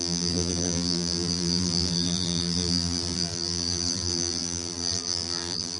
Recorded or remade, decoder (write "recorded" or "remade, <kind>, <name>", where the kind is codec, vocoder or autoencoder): remade, vocoder, BigVGAN v2